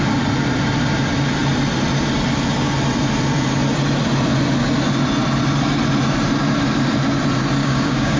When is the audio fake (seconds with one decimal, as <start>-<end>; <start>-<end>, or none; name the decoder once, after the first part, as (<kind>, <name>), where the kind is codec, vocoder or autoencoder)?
7.6-8.2 (codec, DAC)